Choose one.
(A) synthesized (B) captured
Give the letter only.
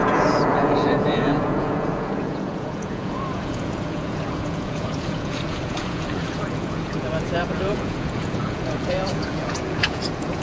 A